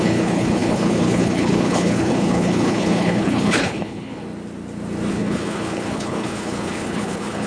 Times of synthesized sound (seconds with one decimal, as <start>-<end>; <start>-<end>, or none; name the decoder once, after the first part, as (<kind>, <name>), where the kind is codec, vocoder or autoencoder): 0.0-4.2 (codec, HILCodec); 5.1-7.5